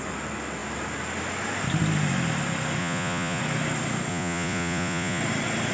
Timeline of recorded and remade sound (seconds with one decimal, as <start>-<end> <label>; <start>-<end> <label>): 0.0-2.8 recorded; 2.8-3.4 remade; 3.4-4.1 recorded; 4.1-5.2 remade; 5.2-5.7 recorded